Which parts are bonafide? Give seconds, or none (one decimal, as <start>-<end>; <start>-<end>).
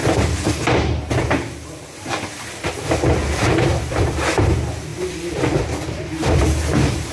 0.0-3.3